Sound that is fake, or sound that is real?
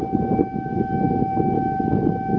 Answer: real